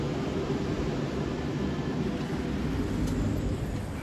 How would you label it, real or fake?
real